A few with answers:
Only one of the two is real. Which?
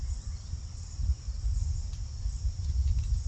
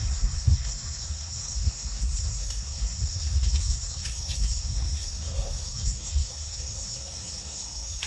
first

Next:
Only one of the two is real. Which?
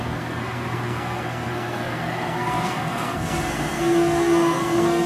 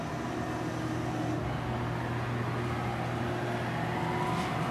second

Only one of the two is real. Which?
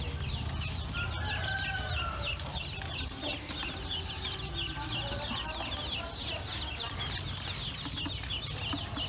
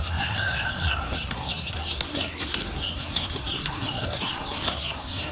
first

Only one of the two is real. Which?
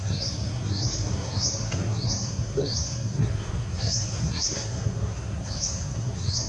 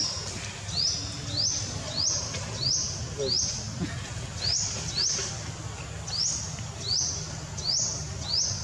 second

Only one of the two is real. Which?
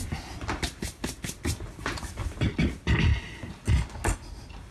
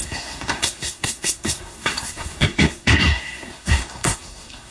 first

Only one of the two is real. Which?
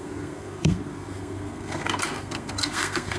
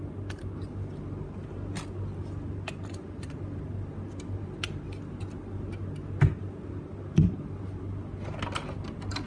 second